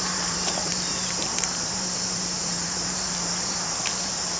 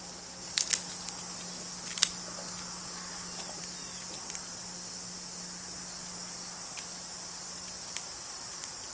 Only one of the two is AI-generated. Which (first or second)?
first